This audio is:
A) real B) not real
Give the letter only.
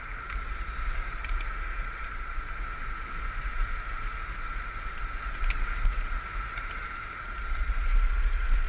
A